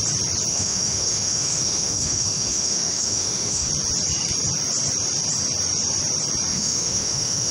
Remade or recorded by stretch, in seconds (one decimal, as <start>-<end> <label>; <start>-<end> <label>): 0.0-0.5 recorded; 0.5-3.7 remade; 3.7-6.5 recorded; 6.5-7.5 remade